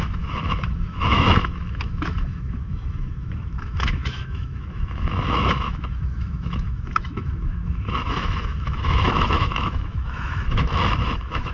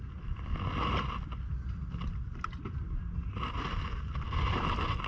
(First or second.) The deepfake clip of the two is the first